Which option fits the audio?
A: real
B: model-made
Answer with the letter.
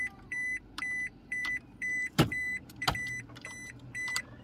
B